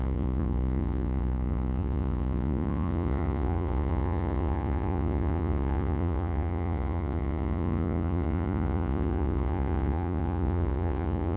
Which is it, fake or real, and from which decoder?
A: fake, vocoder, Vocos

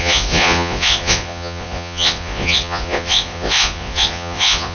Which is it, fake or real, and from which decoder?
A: fake, vocoder, Vocos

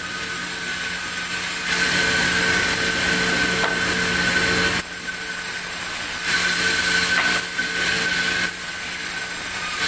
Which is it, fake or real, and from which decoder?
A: real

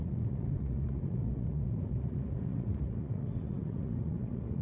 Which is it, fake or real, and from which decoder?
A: fake, vocoder, Vocos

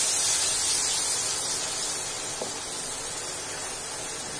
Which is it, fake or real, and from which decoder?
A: real